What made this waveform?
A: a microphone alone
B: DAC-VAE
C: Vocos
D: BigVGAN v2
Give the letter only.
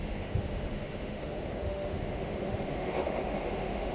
B